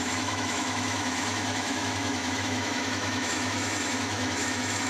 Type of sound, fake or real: fake